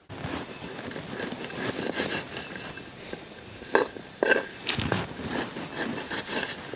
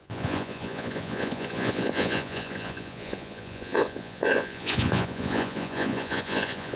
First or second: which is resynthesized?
second